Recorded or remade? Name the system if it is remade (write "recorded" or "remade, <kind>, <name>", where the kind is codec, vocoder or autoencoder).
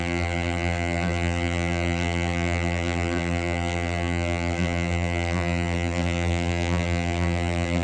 remade, vocoder, BigVGAN v2